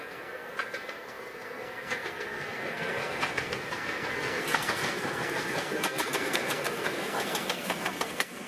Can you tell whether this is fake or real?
fake